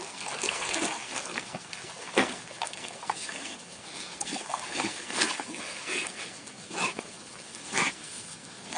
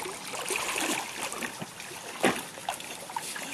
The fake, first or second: first